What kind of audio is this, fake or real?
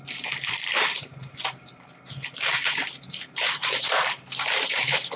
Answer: fake